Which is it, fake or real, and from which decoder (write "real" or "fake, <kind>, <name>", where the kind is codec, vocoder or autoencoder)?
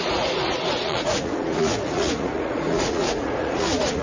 fake, vocoder, Vocos